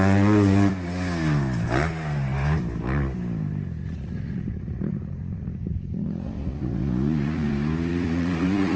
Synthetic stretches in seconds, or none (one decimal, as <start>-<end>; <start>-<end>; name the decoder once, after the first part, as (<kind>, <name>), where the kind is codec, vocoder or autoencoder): 3.8-7.5 (vocoder, Vocos); 7.9-8.8